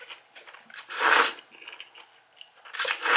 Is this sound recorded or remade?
recorded